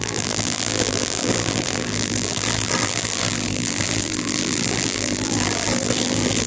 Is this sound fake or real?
fake